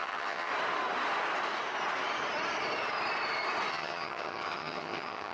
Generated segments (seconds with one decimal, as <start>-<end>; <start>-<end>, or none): 0.0-0.5; 3.7-5.3